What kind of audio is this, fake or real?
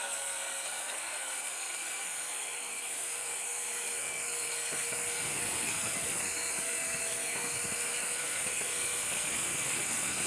fake